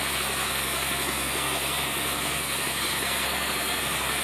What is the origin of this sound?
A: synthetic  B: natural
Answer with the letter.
A